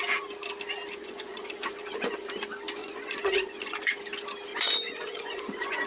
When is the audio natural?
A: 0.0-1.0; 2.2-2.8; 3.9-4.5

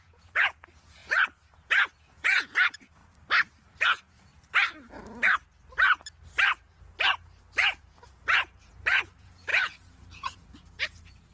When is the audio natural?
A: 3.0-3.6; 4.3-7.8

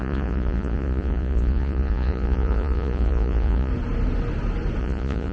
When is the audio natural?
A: 3.7-4.8

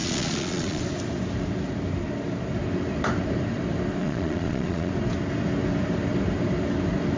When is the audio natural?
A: 0.8-4.0; 4.9-7.2

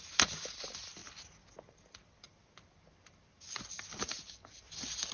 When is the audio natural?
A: 0.0-5.1

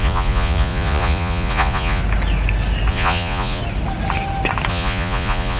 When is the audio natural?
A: 2.0-2.9; 3.6-4.7